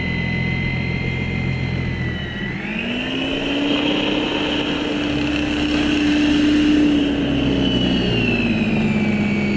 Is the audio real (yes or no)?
yes